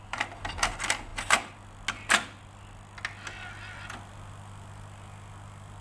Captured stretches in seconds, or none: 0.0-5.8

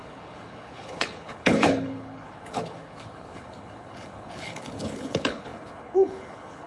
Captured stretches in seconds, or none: none

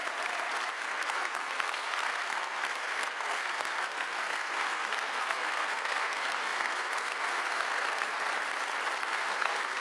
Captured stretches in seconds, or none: 0.0-0.7; 8.3-9.0

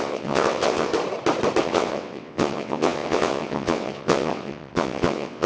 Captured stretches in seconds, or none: 0.9-1.6

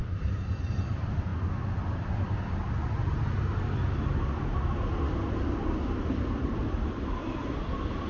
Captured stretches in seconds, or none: 0.0-0.6; 1.3-5.1

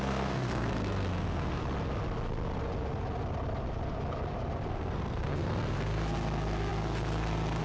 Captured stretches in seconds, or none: 1.6-4.7